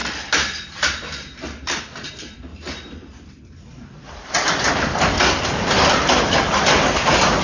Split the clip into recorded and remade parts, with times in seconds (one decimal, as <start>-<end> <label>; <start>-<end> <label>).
0.0-2.1 recorded; 2.1-7.4 remade